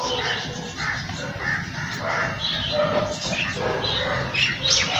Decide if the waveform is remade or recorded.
recorded